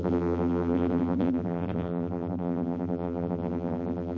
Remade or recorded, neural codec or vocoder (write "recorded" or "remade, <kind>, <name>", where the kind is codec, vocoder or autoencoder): remade, vocoder, BigVGAN v2